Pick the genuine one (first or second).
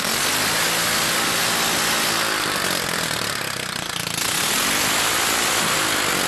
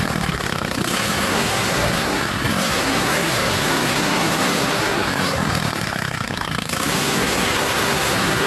first